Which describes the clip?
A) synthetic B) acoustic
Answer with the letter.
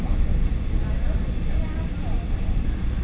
B